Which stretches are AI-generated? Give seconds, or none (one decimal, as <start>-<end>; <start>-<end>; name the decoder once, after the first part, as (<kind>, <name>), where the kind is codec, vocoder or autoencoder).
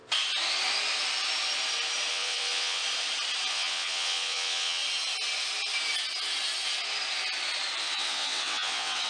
2.1-2.8 (vocoder, WaveNeXt); 3.5-4.8; 7.8-9.1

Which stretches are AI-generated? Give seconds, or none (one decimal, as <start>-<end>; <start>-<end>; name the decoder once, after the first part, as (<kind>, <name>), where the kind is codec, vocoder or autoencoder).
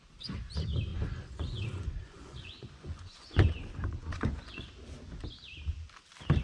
0.9-4.7 (vocoder, Vocos)